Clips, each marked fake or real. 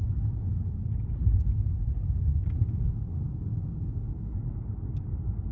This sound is real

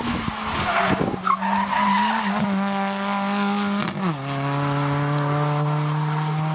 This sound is real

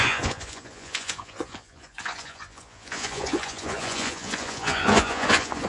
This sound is fake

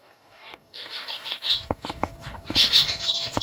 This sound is fake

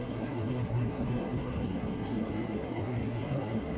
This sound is fake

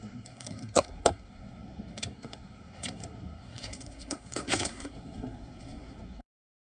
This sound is fake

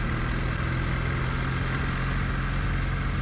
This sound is real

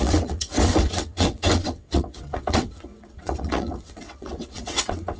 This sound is fake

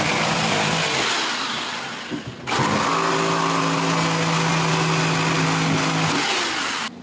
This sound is real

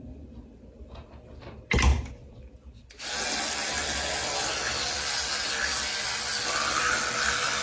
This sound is real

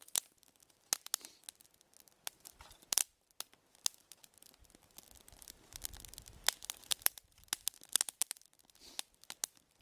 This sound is real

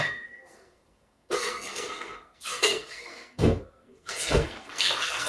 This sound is fake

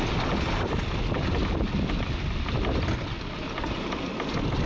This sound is real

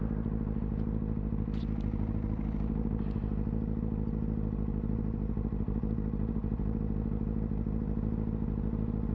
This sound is real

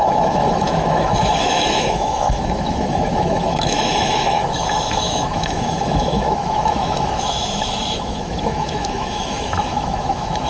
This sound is fake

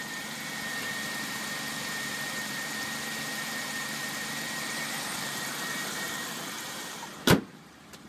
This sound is fake